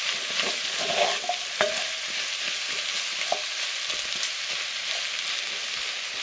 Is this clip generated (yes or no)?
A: no